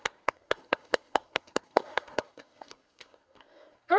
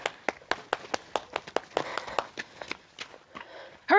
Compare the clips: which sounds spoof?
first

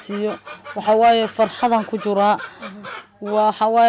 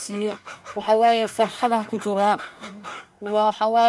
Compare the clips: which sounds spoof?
second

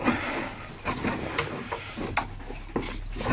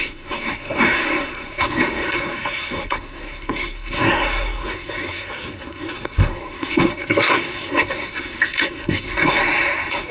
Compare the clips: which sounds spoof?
second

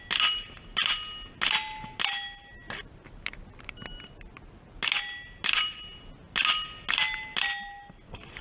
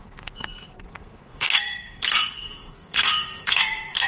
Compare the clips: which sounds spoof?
second